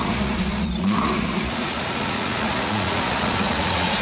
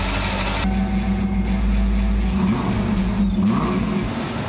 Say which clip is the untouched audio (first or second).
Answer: second